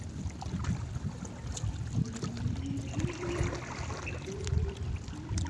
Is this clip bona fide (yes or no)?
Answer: yes